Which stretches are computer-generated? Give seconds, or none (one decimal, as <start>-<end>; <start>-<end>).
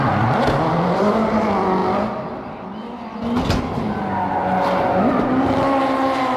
none